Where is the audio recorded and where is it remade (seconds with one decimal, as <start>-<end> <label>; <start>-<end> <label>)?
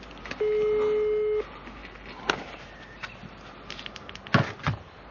0.0-5.1 recorded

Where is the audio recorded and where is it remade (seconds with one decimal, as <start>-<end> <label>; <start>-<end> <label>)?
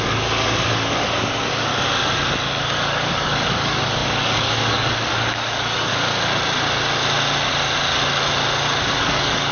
0.0-1.7 remade; 1.7-2.6 recorded; 2.6-5.9 remade; 5.9-9.0 recorded; 9.0-9.5 remade